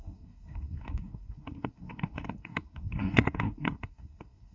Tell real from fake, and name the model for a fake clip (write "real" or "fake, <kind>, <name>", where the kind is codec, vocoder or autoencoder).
fake, codec, SNAC